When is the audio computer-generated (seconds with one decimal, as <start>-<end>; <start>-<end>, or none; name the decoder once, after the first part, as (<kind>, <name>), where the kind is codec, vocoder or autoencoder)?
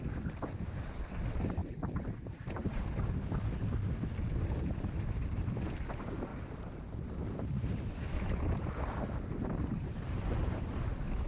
1.6-2.8 (vocoder, BigVGAN v2); 6.3-10.6